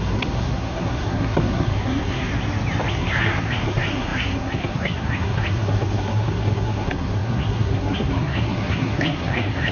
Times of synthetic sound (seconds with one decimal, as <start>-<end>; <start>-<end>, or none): 0.0-2.3; 2.9-9.7